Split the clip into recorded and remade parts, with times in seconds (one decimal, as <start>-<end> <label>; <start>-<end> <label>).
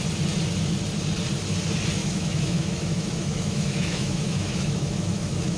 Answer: 0.0-2.0 recorded; 2.0-5.6 remade